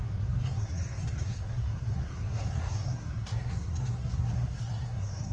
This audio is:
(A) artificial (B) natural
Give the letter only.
A